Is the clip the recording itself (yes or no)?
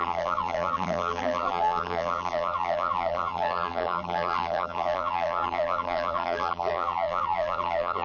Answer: no